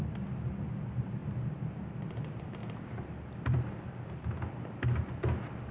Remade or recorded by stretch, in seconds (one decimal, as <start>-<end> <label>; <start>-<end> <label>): 0.0-2.6 recorded; 2.6-4.8 remade; 4.8-5.7 recorded